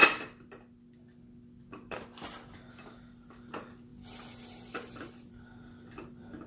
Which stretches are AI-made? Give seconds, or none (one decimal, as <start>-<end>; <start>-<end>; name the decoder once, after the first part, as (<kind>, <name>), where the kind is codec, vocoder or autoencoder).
none